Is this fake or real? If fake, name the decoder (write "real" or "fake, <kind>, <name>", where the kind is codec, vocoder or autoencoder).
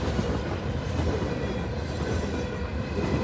real